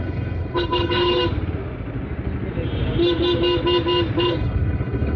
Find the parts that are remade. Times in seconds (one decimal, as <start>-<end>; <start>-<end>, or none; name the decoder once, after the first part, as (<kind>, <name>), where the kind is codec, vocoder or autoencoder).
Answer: 0.0-1.2 (codec, HILCodec); 4.2-5.2